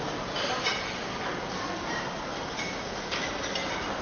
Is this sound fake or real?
real